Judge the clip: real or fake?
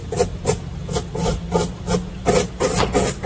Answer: real